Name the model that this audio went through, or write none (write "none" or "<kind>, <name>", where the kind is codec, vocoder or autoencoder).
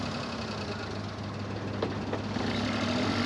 none